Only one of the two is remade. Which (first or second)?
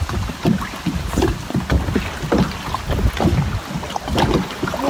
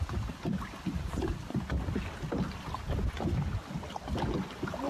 second